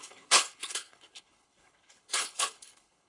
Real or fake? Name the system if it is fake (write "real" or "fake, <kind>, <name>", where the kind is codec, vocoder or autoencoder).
fake, codec, HILCodec